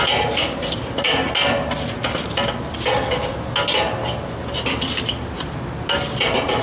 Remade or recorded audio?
recorded